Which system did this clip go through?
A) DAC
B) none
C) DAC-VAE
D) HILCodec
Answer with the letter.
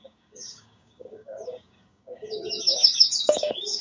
A